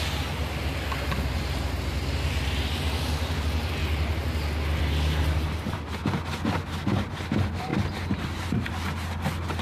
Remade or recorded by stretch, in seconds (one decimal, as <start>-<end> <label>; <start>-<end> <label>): 0.0-7.7 recorded; 7.7-8.7 remade; 8.7-9.6 recorded

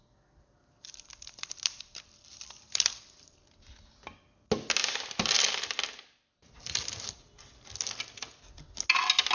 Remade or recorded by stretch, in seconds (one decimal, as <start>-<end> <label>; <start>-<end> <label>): 0.0-3.4 remade; 3.4-9.3 recorded

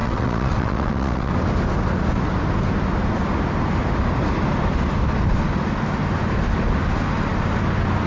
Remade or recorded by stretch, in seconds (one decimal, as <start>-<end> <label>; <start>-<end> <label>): 0.0-1.3 remade; 1.3-8.1 recorded

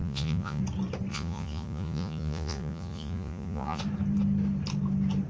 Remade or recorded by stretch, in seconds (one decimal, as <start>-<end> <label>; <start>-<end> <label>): 0.0-0.6 remade; 0.6-1.1 recorded; 1.1-3.8 remade; 3.8-5.3 recorded

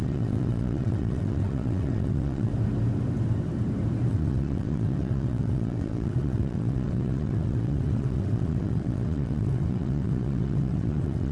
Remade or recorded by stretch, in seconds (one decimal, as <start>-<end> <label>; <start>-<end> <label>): 0.0-2.5 remade; 2.5-4.1 recorded; 4.1-11.3 remade

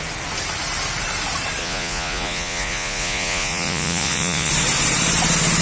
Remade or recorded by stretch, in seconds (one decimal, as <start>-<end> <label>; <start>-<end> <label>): 0.0-1.6 recorded; 1.6-4.5 remade; 4.5-5.6 recorded

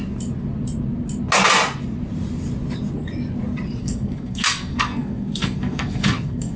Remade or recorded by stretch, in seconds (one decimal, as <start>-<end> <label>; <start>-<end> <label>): 0.0-3.8 recorded; 3.8-6.6 remade